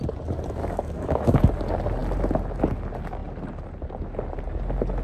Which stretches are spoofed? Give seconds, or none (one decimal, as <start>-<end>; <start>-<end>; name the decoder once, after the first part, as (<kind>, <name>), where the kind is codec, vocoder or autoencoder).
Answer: 0.6-1.5 (codec, DAC)